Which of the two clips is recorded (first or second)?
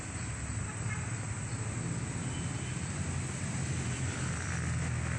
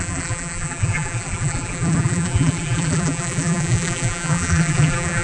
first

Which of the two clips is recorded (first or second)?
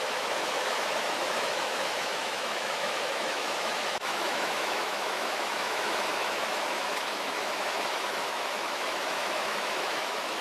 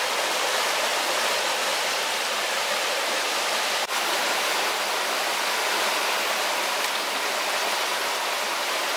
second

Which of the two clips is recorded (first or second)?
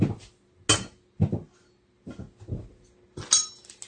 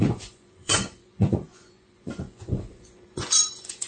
first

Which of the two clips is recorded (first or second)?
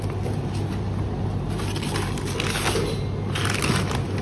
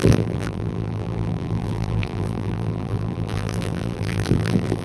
first